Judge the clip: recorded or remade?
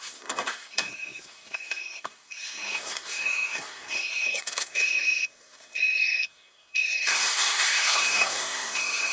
remade